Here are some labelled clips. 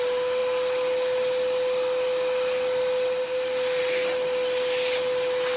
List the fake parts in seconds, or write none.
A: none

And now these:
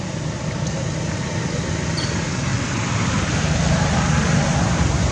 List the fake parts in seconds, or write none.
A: none

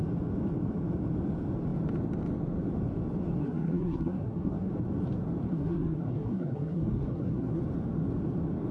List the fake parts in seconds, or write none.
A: 3.4-4.7 (codec, SNAC); 5.5-7.6

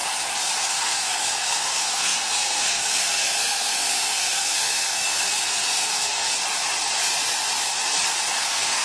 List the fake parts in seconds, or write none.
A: 0.6-6.3 (codec, SNAC); 8.4-8.8

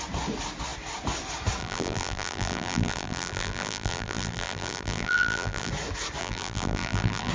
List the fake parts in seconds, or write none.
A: 1.6-5.7 (vocoder, BigVGAN v2); 6.2-7.3

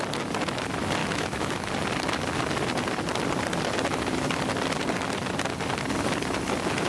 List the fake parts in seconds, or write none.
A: 1.0-1.7 (autoencoder, DAC-VAE)

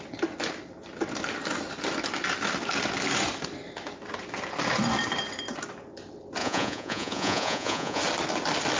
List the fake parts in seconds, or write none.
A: 6.4-8.0 (vocoder, Vocos)

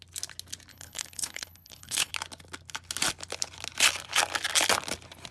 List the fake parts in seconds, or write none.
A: 0.7-2.1 (codec, HILCodec)